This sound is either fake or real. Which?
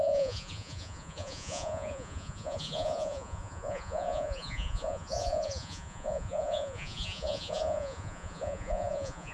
fake